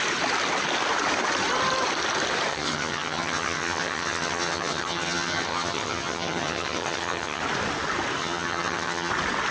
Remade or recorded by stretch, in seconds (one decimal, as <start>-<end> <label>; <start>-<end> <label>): 0.0-2.5 recorded; 2.5-7.4 remade; 7.4-8.2 recorded; 8.2-9.1 remade; 9.1-9.5 recorded